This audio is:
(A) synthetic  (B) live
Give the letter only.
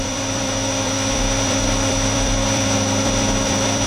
A